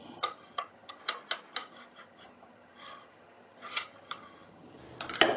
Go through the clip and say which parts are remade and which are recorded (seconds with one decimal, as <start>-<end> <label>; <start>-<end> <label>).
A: 0.0-1.0 remade; 1.0-1.6 recorded; 1.6-4.8 remade; 4.8-5.4 recorded